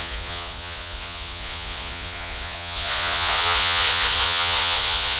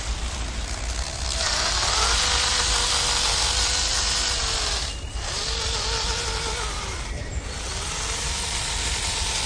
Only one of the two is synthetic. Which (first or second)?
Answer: first